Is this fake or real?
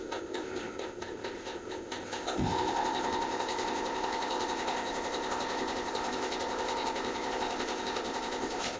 fake